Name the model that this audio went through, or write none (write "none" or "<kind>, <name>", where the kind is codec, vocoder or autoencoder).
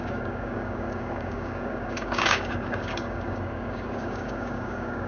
codec, DAC